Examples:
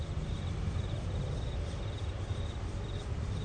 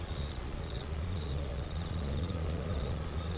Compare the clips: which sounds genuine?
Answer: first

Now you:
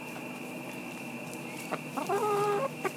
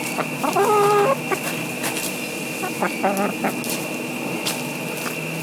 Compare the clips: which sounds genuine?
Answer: second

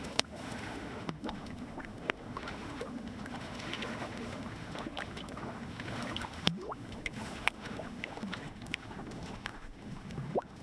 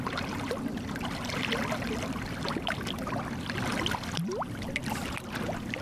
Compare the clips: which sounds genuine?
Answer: second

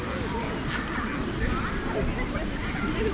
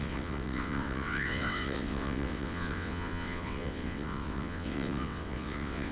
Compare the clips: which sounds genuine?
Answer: first